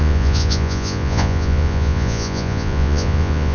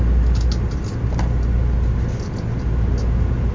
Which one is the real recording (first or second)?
second